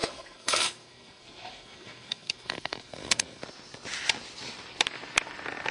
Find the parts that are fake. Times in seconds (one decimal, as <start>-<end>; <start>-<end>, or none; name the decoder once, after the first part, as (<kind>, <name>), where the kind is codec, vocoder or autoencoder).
0.0-3.4 (codec, SNAC)